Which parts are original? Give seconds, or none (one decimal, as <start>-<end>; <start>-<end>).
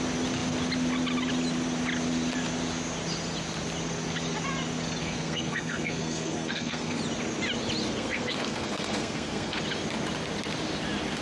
0.0-5.0; 7.0-7.8; 9.6-11.2